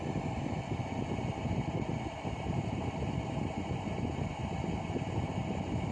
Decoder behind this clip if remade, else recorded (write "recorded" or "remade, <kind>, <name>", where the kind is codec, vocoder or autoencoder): recorded